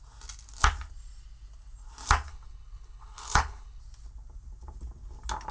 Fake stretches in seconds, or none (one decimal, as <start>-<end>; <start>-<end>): 2.3-3.8